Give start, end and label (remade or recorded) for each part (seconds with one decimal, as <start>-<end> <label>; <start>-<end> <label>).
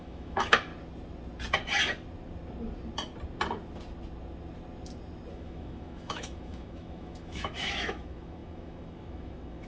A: 0.0-0.7 remade; 0.7-5.3 recorded; 5.3-9.7 remade